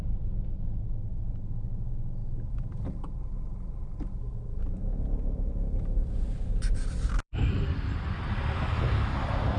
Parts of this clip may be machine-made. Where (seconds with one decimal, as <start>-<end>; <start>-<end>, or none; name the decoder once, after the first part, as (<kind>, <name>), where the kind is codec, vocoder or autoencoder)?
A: 2.2-7.5 (vocoder, BigVGAN v2)